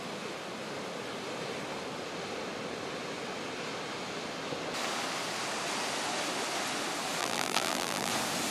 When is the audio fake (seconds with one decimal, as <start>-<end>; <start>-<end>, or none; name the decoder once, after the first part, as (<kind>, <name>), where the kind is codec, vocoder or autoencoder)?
7.2-8.1 (vocoder, BigVGAN v2)